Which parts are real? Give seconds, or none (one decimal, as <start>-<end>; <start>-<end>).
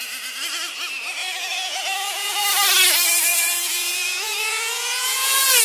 0.0-1.2; 2.4-3.3